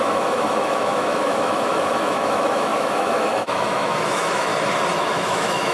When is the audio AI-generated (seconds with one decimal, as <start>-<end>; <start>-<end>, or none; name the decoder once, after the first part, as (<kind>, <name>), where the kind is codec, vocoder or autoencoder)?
0.0-4.5 (autoencoder, DAC-VAE); 5.0-5.7